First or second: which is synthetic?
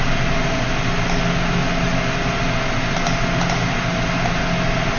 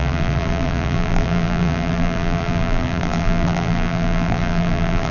second